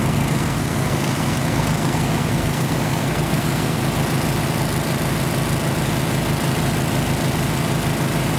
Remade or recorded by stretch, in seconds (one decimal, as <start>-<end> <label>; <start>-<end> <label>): 0.0-3.8 remade; 3.8-8.4 recorded